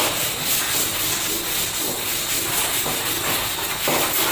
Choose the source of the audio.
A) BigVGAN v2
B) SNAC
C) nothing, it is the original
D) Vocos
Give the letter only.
C